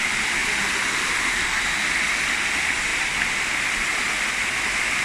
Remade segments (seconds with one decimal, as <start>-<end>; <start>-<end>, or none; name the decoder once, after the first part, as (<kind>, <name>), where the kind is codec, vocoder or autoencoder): none